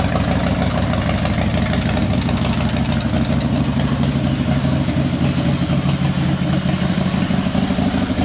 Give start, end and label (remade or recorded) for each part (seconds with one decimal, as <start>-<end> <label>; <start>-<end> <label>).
0.0-8.2 recorded